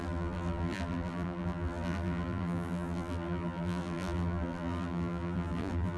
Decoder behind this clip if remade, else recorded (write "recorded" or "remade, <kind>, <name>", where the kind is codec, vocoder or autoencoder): remade, vocoder, BigVGAN v2